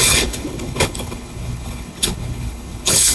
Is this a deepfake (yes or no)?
yes